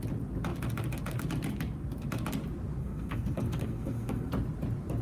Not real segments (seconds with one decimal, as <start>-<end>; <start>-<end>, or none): 2.8-4.3